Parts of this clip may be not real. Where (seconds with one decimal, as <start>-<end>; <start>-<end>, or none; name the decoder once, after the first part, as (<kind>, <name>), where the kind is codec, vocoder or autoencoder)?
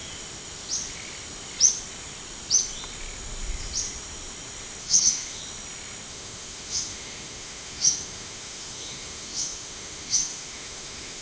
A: 4.8-5.4 (autoencoder, DAC-VAE); 6.1-11.2